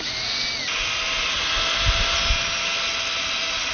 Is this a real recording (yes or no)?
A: yes